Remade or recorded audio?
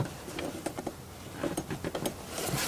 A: recorded